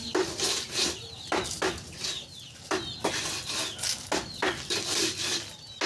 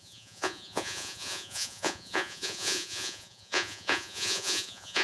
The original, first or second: first